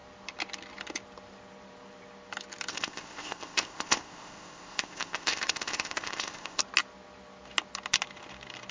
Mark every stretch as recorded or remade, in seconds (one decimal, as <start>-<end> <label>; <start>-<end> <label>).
0.0-2.7 recorded; 2.7-6.6 remade; 6.6-8.7 recorded